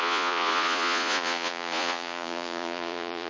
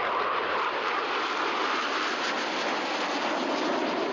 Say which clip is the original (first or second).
second